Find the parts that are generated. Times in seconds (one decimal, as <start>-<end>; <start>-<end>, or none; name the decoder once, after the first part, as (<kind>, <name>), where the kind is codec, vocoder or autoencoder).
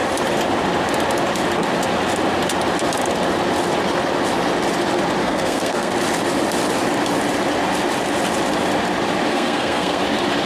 5.2-5.9 (codec, SNAC); 9.3-10.0